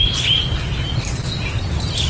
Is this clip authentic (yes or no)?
yes